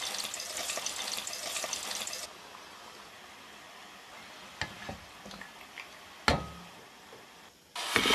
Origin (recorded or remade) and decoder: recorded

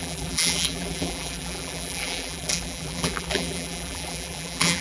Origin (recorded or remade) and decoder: remade, vocoder, BigVGAN v2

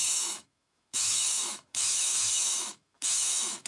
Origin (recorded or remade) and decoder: remade, autoencoder, DAC-VAE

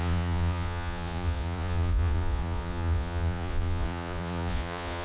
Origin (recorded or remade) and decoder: remade, vocoder, Vocos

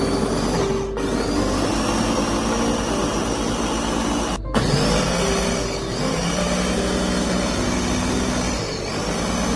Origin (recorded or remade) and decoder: recorded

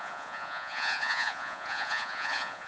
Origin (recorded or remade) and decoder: remade, vocoder, Vocos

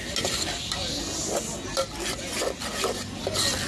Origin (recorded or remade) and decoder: recorded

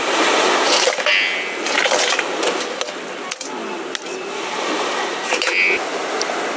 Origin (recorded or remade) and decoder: recorded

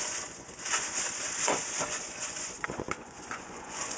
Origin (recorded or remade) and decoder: remade, vocoder, Vocos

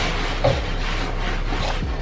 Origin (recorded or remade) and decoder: recorded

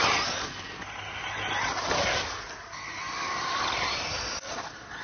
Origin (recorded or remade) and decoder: recorded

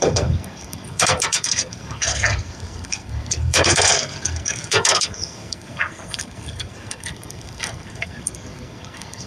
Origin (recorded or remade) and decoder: remade, codec, SNAC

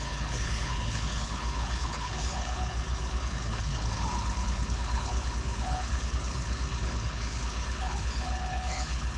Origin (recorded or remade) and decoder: remade, codec, HILCodec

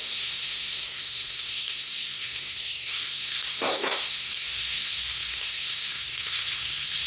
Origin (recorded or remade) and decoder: remade, codec, SNAC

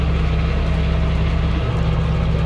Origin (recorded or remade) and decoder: recorded